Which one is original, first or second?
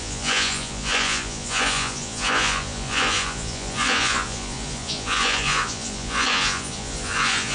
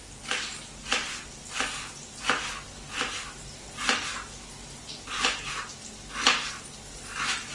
second